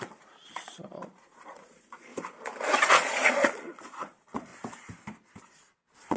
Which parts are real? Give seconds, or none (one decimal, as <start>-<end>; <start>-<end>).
2.1-2.9; 4.5-5.4